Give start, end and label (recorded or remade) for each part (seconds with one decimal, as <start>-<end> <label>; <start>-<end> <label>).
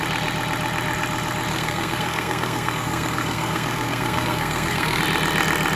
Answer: 0.0-1.5 recorded; 1.5-5.0 remade; 5.0-5.8 recorded